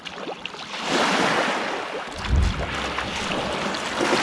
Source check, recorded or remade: recorded